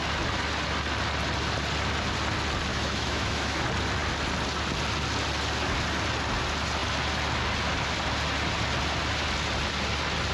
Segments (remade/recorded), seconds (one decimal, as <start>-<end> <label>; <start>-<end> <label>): 0.0-2.7 recorded; 2.7-3.6 remade; 3.6-10.3 recorded